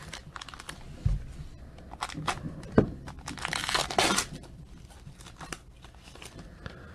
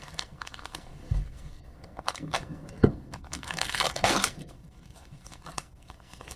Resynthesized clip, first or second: second